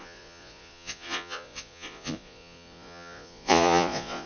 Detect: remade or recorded remade